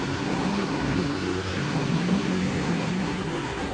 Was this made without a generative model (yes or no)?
no